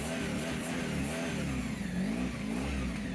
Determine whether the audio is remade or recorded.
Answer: recorded